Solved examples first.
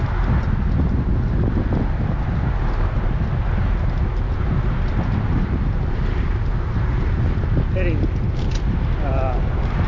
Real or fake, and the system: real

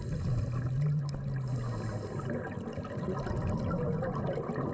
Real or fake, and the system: real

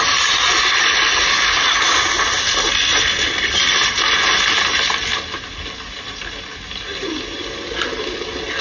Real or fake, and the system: real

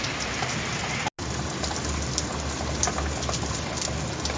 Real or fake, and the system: real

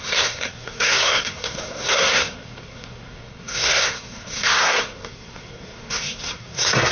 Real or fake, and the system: fake, codec, SNAC